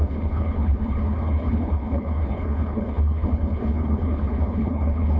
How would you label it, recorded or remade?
remade